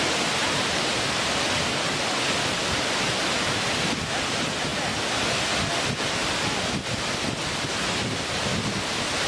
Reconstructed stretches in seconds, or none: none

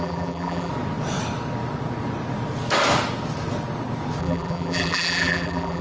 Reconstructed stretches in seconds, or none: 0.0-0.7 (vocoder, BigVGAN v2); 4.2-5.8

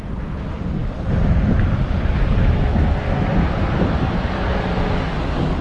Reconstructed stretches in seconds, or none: none

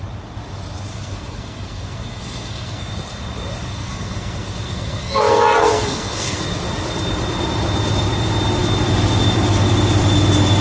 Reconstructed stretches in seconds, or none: 0.9-2.9 (codec, SNAC); 3.7-6.4

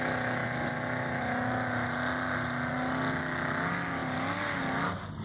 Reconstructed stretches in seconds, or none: none

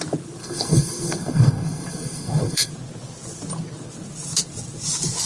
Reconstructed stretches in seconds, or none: 0.4-2.7 (codec, SNAC)

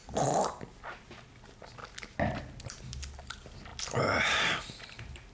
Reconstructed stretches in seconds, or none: 1.1-1.8 (vocoder, BigVGAN v2); 2.8-5.3

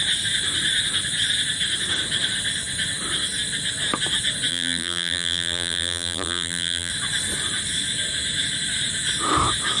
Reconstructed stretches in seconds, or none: 4.5-6.9 (vocoder, BigVGAN v2)